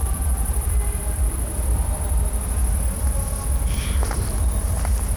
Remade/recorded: recorded